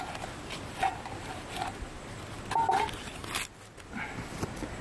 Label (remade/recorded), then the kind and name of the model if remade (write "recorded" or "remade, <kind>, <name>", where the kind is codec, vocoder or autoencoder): recorded